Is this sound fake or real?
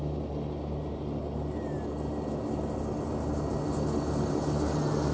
real